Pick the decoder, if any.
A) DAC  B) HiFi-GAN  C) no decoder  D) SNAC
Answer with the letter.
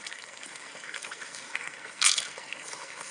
D